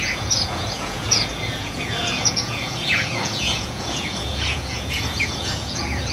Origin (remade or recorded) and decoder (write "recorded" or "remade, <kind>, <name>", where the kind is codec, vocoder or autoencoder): remade, vocoder, Vocos